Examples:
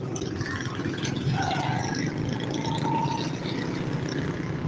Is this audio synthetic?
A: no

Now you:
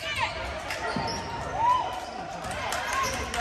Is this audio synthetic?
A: no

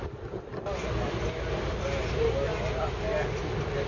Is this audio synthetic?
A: no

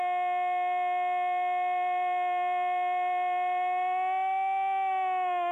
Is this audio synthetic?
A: no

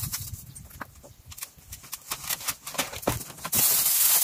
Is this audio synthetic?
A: no